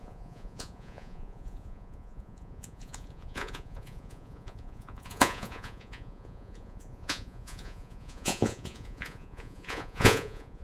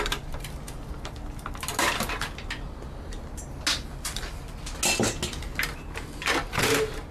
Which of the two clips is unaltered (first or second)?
second